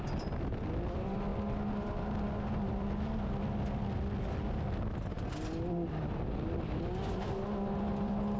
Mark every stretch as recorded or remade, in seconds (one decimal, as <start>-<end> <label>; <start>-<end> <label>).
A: 0.0-8.4 recorded